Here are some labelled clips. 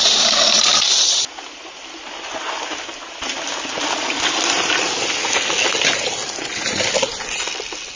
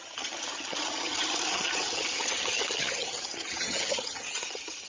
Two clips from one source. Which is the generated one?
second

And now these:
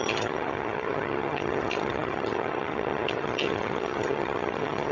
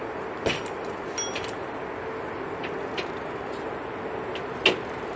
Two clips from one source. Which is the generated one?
first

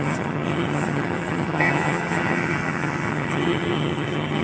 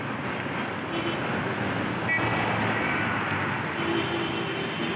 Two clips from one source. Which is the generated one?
first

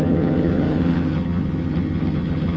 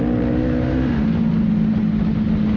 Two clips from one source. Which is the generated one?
first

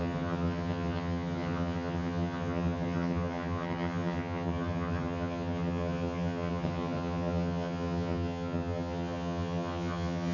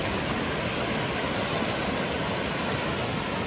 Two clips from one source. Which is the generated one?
first